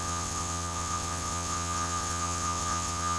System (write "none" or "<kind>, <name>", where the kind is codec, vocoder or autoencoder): vocoder, WaveNeXt